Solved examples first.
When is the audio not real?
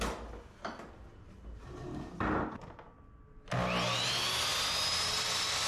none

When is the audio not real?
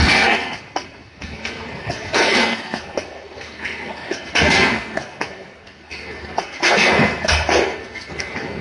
0.0-8.6 (codec, SNAC)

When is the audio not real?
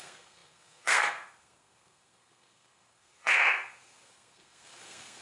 0.0-5.2 (codec, SNAC)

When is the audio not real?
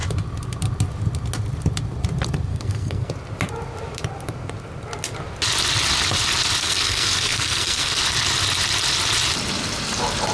2.5-3.1 (codec, SNAC); 6.6-8.0